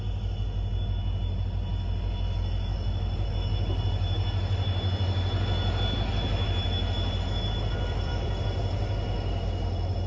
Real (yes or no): yes